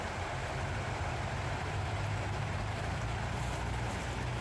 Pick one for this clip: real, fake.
fake